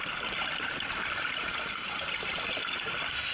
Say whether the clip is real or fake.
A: real